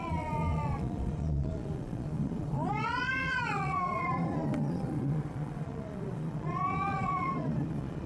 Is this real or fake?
fake